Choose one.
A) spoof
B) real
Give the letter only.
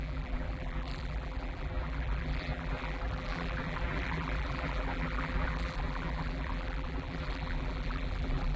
A